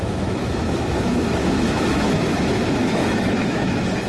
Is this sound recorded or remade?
remade